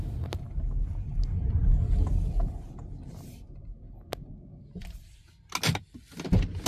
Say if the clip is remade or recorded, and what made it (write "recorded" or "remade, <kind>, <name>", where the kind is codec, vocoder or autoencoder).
recorded